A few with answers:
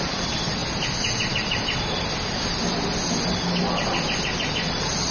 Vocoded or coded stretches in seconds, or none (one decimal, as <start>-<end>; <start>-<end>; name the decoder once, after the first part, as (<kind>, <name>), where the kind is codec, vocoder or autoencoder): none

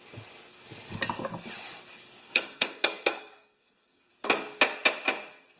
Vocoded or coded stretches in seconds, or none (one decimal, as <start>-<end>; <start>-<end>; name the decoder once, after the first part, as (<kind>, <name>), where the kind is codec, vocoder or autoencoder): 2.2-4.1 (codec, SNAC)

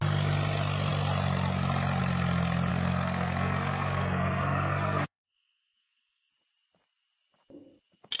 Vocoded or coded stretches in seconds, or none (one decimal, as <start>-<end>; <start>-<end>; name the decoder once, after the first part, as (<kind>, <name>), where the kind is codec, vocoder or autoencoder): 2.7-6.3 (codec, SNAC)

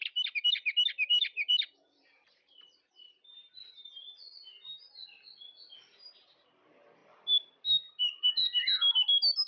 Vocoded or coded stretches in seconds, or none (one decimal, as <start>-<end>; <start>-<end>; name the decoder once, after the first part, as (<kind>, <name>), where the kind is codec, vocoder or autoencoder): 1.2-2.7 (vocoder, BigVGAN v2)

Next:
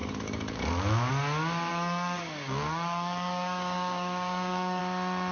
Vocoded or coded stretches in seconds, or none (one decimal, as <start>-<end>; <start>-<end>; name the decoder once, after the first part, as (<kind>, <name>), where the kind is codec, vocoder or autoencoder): 0.0-1.1 (codec, DAC); 1.7-4.8

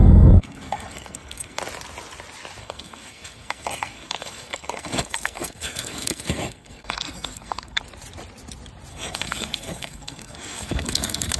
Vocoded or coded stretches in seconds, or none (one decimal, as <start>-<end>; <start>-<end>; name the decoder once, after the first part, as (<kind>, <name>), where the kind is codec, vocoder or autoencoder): 0.0-1.6 (codec, SNAC); 2.6-7.8; 8.9-11.4

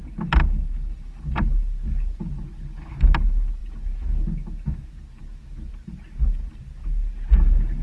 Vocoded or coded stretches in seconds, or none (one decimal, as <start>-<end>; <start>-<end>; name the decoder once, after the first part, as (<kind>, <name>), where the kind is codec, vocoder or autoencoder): none

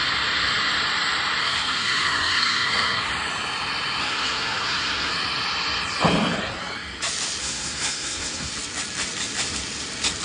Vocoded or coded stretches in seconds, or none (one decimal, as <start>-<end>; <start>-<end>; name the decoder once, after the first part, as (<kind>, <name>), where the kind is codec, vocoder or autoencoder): 1.4-3.1 (codec, SNAC); 4.0-5.1; 7.4-8.5